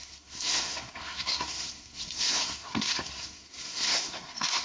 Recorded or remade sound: remade